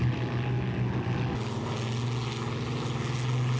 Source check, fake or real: real